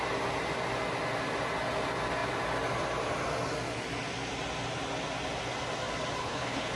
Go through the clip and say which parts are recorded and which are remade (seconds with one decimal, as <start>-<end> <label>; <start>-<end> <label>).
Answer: 0.0-6.2 recorded; 6.2-6.8 remade